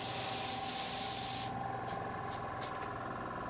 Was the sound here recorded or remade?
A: recorded